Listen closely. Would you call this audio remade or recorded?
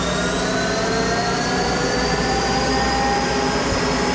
recorded